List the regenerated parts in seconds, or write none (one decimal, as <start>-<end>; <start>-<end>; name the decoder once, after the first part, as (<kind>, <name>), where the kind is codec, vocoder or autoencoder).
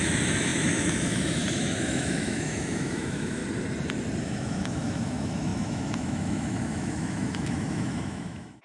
0.0-3.4 (autoencoder, DAC-VAE); 4.2-8.6